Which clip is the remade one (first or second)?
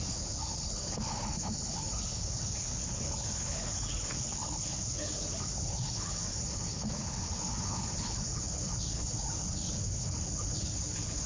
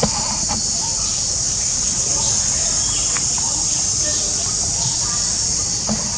first